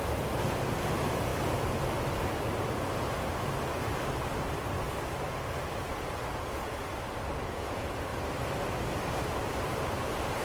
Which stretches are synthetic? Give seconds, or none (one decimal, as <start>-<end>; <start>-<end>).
0.0-1.3; 6.3-6.8; 7.4-8.1; 10.0-10.4